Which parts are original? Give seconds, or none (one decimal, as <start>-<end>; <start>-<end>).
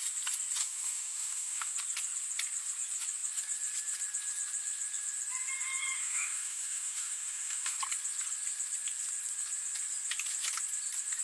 0.0-0.6; 1.7-6.0; 7.8-11.2